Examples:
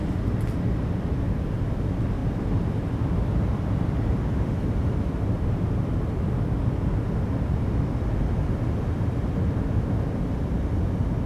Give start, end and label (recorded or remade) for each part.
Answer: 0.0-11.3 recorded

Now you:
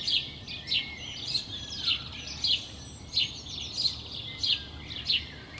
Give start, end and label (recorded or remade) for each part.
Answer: 0.0-5.6 recorded

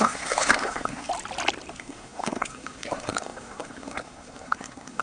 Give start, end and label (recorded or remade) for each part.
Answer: 0.0-1.1 remade; 1.1-1.7 recorded; 1.7-5.0 remade

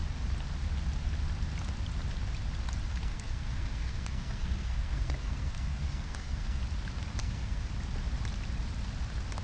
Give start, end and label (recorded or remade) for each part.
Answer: 0.0-2.9 recorded; 2.9-6.6 remade; 6.6-7.2 recorded; 7.2-7.7 remade; 7.7-9.4 recorded

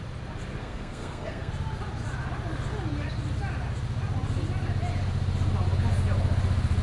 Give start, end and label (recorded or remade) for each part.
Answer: 0.0-0.6 recorded; 0.6-1.5 remade; 1.5-6.8 recorded

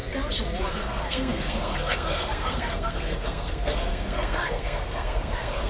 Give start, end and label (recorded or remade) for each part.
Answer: 0.0-0.7 recorded; 0.7-5.7 remade